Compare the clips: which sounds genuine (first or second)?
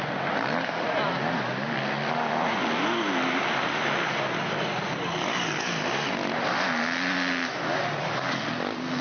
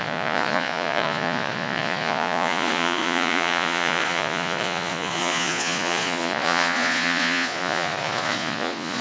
first